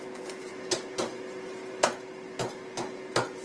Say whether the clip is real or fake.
real